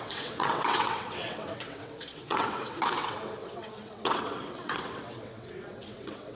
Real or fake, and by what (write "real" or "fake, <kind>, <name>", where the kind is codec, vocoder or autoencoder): fake, vocoder, WaveNeXt